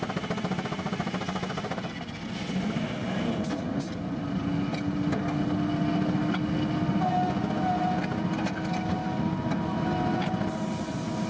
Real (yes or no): yes